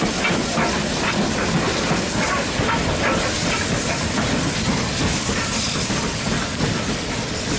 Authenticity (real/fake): real